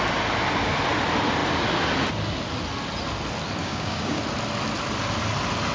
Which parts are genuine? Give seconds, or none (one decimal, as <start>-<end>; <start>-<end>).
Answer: 0.0-3.6; 4.2-5.7